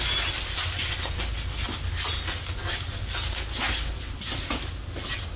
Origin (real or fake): real